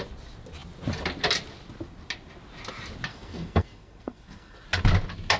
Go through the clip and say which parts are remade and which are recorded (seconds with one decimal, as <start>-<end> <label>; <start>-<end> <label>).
0.0-3.1 recorded; 3.1-4.6 remade; 4.6-5.4 recorded